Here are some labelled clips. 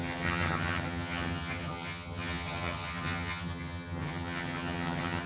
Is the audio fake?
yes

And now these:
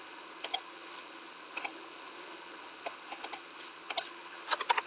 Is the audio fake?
yes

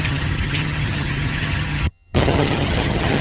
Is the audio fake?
yes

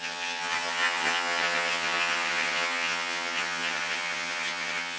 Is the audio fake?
yes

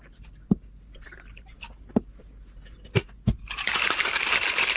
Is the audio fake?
no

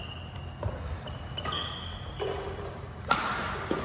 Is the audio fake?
no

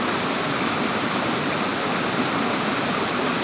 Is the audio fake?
no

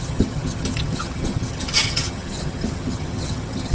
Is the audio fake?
yes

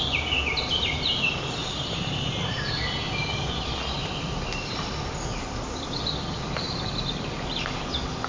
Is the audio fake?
no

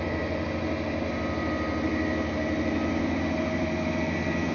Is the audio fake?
no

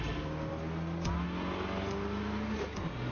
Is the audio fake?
no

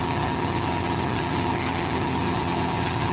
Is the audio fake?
yes